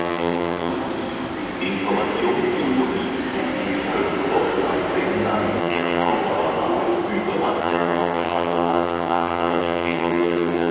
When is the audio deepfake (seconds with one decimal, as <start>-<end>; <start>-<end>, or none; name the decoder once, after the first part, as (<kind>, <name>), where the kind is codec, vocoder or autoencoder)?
0.0-0.7 (vocoder, HiFi-GAN); 5.6-6.1; 7.6-10.7